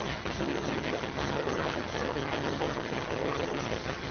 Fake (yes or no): yes